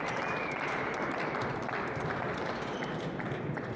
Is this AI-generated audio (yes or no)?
no